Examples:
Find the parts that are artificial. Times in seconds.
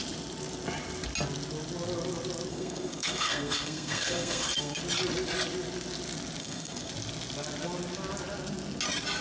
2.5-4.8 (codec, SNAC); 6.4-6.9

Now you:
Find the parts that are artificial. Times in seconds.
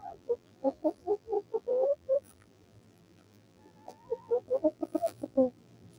0.0-6.0 (vocoder, BigVGAN v2)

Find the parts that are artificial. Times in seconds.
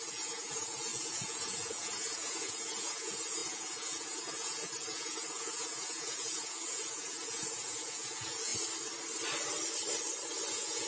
0.0-8.5 (vocoder, Vocos); 10.5-10.9